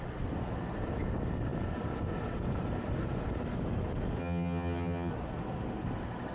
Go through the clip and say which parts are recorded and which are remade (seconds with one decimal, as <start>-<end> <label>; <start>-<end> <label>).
0.0-4.2 recorded; 4.2-5.1 remade; 5.1-6.3 recorded